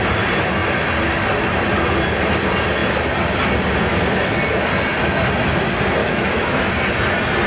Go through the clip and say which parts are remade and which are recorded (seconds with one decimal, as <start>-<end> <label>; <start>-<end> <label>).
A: 0.0-6.0 recorded; 6.0-6.7 remade; 6.7-7.5 recorded